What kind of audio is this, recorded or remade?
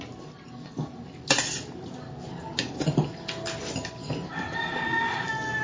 recorded